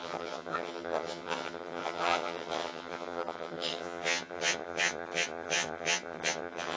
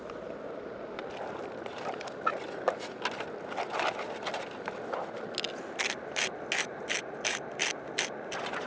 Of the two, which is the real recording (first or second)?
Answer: second